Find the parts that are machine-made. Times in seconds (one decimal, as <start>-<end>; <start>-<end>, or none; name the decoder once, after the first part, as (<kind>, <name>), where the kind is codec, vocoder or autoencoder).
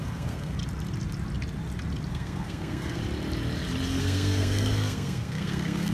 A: 0.0-0.6 (codec, SNAC); 2.1-3.0; 4.0-5.9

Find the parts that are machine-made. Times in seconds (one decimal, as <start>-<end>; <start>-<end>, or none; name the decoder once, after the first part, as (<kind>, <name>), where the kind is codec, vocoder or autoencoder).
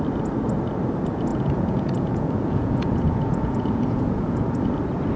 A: 1.3-4.4 (vocoder, Vocos)